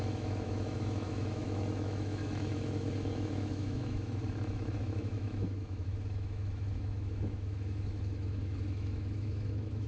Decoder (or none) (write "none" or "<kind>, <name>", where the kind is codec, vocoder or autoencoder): autoencoder, DAC-VAE